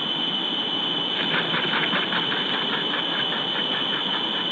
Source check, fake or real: real